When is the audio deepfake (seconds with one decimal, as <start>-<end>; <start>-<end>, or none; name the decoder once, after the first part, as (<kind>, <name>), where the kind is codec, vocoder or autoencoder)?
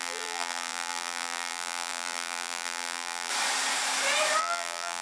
0.0-3.3 (vocoder, BigVGAN v2); 4.4-5.0